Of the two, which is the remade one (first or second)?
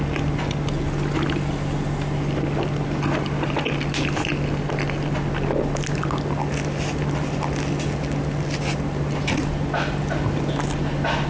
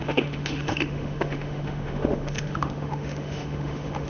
second